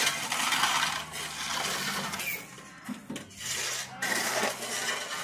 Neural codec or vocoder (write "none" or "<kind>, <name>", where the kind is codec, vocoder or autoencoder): none